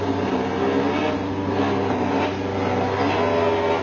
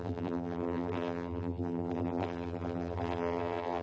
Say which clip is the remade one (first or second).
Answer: second